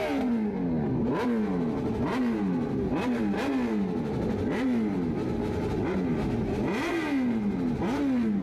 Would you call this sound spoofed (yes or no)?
no